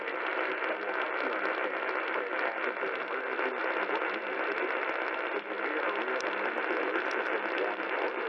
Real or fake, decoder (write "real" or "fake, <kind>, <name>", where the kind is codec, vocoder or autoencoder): real